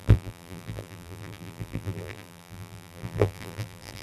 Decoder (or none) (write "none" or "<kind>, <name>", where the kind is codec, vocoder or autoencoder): vocoder, BigVGAN v2